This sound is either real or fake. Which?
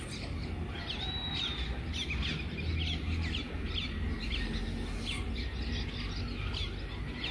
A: real